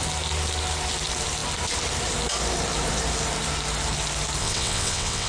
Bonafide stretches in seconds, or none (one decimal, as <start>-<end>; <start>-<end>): 0.0-4.4